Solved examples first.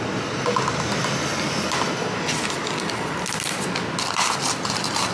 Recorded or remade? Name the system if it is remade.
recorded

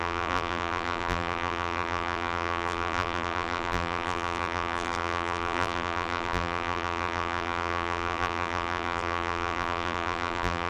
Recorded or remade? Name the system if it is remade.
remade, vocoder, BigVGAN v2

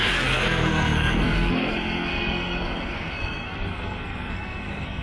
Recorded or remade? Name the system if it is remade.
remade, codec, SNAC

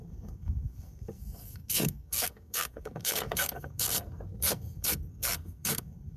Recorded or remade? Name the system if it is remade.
remade, codec, SNAC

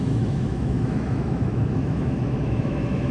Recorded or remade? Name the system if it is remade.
remade, autoencoder, DAC-VAE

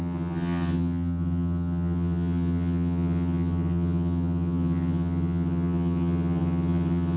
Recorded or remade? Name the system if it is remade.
remade, vocoder, HiFi-GAN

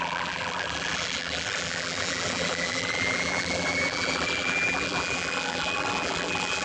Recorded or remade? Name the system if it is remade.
remade, vocoder, BigVGAN v2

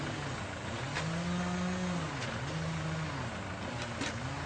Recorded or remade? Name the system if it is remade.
recorded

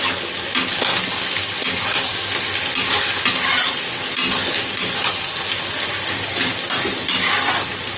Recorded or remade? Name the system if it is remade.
recorded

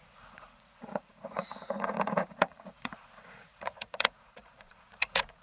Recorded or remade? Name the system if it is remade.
remade, vocoder, Vocos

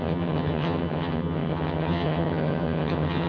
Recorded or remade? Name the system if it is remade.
remade, vocoder, HiFi-GAN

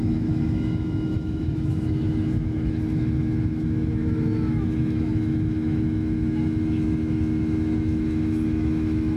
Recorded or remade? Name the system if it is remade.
remade, autoencoder, DAC-VAE